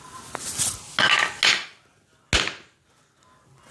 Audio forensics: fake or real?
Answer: real